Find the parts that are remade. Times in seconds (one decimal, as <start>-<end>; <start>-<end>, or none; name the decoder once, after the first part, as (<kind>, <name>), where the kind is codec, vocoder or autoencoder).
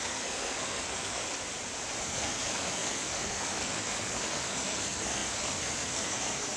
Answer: 0.0-1.2 (codec, SNAC); 2.0-6.6